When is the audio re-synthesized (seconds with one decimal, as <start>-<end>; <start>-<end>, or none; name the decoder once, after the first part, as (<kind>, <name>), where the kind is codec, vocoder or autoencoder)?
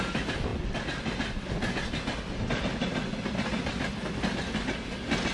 none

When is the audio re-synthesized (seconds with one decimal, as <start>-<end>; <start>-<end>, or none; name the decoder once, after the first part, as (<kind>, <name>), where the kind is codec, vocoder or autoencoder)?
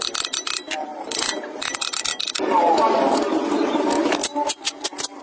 none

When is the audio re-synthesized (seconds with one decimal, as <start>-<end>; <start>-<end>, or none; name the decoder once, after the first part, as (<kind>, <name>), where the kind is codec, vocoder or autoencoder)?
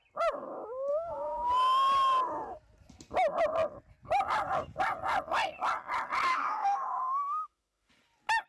0.9-1.5 (autoencoder, DAC-VAE); 6.3-7.9